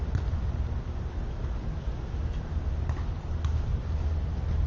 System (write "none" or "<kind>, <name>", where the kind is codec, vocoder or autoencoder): none